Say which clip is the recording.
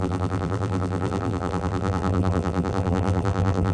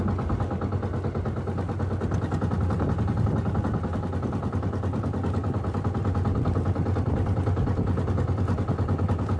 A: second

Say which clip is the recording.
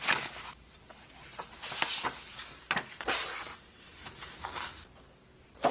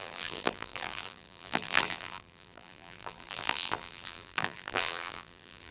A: first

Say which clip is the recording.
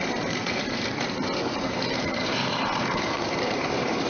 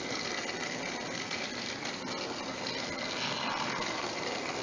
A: second